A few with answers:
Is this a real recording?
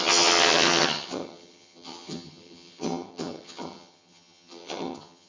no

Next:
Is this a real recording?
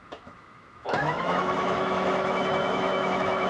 no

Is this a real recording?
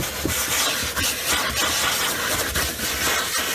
no